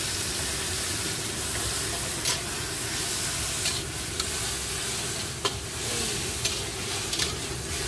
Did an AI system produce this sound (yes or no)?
no